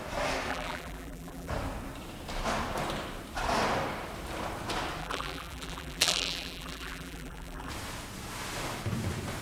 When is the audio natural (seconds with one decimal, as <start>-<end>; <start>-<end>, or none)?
0.0-0.5; 1.5-5.0; 7.7-9.4